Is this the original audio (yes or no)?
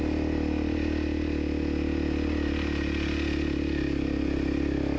yes